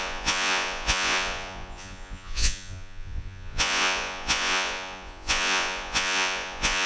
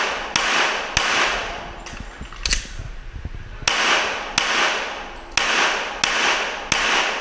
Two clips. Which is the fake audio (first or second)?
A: first